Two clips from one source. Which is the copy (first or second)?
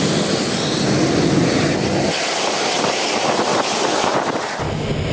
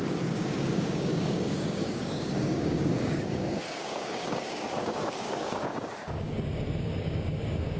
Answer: second